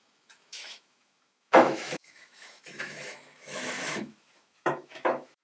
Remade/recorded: remade